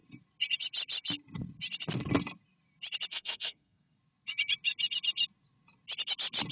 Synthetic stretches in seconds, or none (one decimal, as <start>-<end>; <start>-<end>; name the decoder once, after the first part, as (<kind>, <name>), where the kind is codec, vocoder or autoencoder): 3.1-4.0 (codec, SNAC)